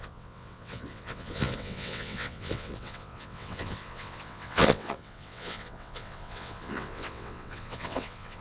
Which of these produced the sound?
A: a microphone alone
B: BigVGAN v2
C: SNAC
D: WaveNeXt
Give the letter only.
D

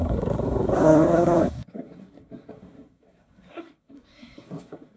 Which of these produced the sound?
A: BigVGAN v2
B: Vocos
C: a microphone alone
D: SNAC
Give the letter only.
D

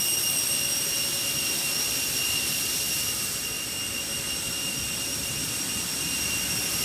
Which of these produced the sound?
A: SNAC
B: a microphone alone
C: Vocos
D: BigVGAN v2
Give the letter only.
B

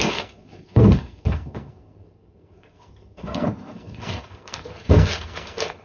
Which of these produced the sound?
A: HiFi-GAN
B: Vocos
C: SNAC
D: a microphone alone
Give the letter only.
C